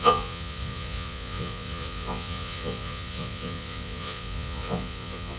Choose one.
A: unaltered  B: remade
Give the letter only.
B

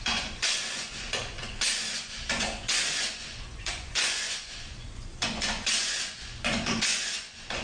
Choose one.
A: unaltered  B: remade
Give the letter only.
B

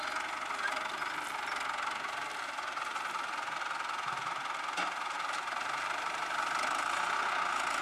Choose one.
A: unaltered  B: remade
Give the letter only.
A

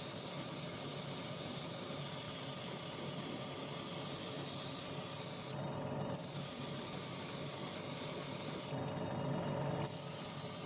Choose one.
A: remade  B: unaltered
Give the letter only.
B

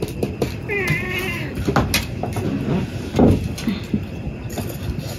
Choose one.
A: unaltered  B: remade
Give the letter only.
A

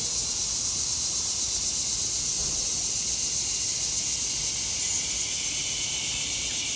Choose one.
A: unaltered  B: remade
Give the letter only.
A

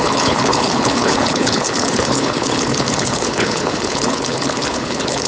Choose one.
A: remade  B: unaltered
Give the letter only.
A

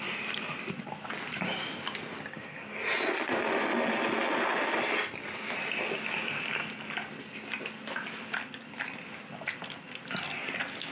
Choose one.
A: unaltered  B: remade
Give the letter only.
A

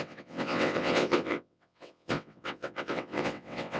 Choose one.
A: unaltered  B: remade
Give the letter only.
B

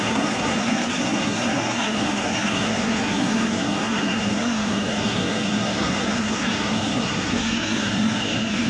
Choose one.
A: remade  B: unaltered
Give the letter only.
A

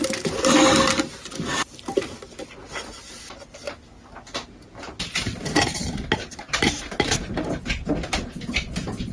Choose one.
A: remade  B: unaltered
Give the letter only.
B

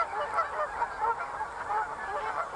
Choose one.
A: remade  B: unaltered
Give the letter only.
B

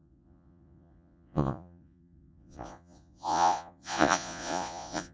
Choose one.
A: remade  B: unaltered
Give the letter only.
A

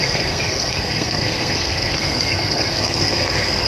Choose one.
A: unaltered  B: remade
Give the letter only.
B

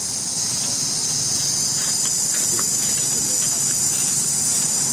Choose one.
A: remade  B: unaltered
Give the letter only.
B